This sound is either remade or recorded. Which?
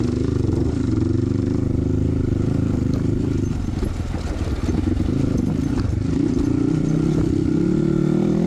recorded